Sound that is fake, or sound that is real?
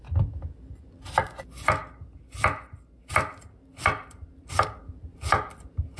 real